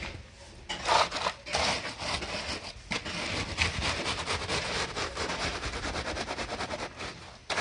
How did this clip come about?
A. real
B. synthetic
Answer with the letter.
A